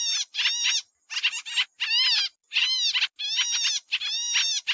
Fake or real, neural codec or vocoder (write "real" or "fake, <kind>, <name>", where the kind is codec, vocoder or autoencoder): real